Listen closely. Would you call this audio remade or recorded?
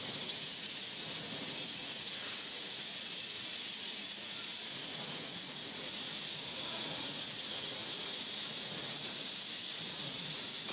remade